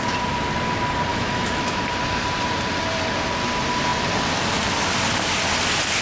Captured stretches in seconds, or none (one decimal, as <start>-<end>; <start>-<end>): 0.0-1.1; 1.8-6.0